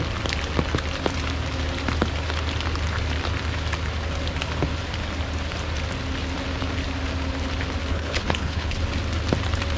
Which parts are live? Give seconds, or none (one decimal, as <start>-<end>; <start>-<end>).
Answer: 0.0-7.9; 8.8-9.8